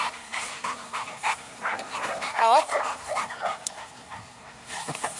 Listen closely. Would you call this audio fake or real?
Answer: fake